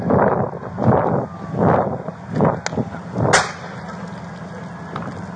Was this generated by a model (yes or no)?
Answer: no